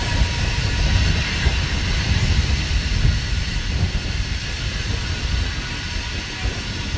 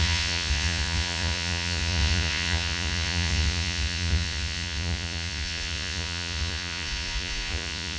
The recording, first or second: first